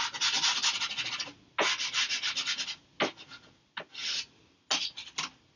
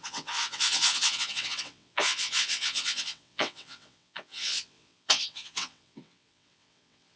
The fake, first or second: second